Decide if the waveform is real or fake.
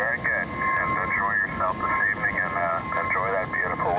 real